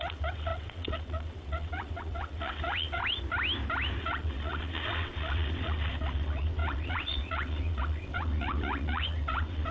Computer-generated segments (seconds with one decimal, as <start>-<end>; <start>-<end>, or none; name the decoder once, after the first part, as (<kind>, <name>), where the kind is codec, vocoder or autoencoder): 0.0-3.0 (vocoder, WaveNeXt); 4.0-9.7